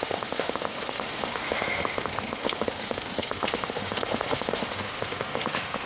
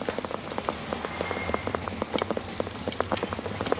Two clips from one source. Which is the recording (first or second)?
second